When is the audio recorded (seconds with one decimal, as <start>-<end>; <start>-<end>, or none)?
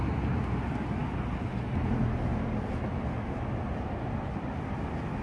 0.0-5.2